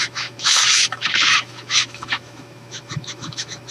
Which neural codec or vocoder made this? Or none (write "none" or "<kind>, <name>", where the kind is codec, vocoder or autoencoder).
autoencoder, DAC-VAE